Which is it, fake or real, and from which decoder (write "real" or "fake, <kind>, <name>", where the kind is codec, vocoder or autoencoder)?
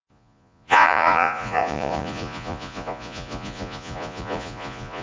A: fake, vocoder, Vocos